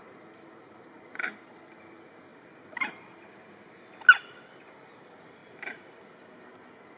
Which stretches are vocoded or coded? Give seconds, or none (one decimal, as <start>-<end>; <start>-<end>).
2.3-3.7; 5.4-6.0